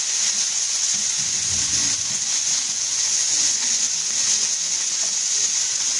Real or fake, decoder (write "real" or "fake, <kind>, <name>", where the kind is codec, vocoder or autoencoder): fake, vocoder, Vocos